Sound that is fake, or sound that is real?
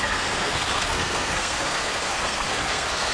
fake